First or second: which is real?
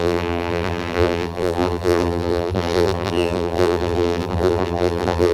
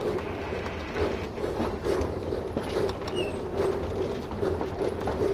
second